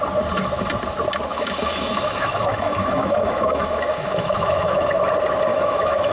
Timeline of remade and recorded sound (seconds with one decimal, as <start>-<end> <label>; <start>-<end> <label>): 0.0-1.3 recorded; 1.3-5.0 remade; 5.0-5.5 recorded; 5.5-6.1 remade